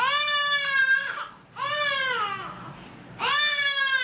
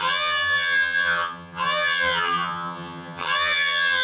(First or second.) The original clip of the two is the first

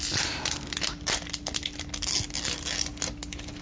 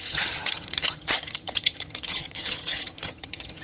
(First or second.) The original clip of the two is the first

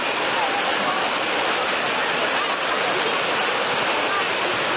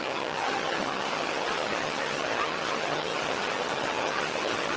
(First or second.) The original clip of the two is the first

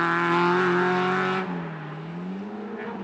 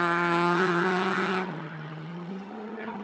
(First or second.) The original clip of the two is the first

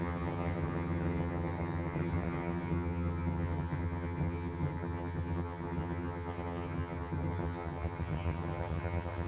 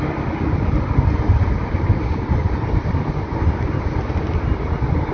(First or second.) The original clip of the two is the second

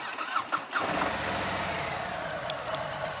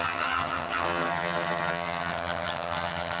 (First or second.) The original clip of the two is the first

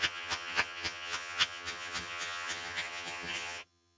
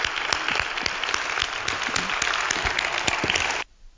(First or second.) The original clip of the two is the second